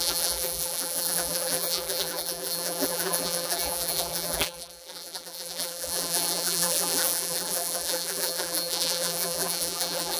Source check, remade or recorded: remade